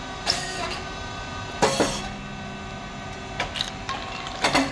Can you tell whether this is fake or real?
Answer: real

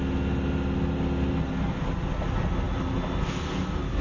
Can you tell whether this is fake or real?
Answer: real